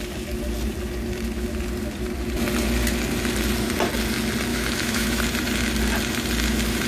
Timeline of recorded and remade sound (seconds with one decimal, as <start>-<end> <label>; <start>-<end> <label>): 0.0-4.5 recorded; 4.5-5.2 remade; 5.2-6.9 recorded